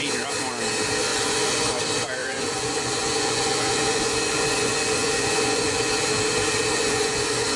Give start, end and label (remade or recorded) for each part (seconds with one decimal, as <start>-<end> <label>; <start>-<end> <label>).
0.0-1.1 recorded; 1.1-1.8 remade; 1.8-2.2 recorded; 2.2-5.9 remade; 5.9-6.7 recorded; 6.7-7.6 remade